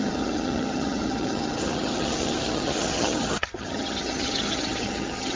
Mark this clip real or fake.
fake